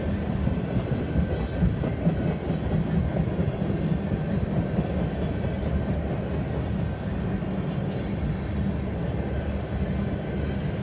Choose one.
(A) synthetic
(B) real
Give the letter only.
B